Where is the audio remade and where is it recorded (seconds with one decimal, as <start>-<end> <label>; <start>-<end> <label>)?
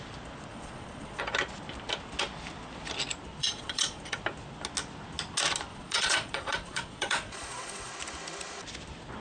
0.0-0.5 recorded; 0.5-1.2 remade; 1.2-3.4 recorded; 3.4-4.0 remade; 4.0-5.7 recorded; 5.7-7.9 remade; 7.9-9.2 recorded